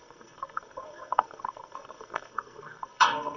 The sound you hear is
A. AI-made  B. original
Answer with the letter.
A